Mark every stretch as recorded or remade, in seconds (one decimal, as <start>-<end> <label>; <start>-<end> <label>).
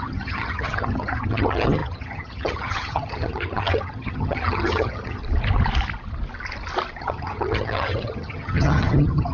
0.0-5.2 remade; 5.2-7.0 recorded; 7.0-9.3 remade